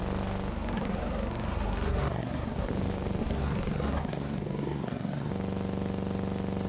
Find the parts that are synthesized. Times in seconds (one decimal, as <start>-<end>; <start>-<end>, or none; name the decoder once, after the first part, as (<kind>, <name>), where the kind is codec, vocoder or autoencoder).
0.5-2.7 (codec, SNAC); 3.2-5.3